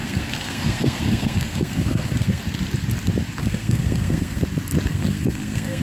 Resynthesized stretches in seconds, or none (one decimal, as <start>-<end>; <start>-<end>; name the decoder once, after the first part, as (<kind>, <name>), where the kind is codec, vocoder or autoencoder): 0.0-2.4 (codec, SNAC); 3.4-4.4; 4.9-5.8